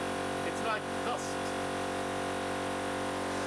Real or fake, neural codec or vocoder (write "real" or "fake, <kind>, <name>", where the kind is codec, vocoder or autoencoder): real